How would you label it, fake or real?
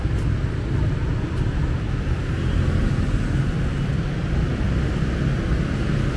real